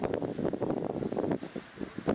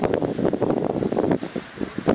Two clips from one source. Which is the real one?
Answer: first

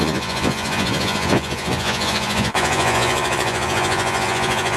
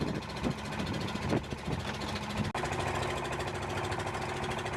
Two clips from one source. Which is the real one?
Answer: second